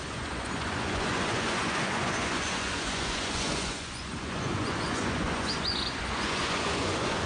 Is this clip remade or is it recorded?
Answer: remade